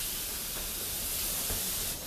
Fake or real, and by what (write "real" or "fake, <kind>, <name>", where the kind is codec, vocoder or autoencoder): real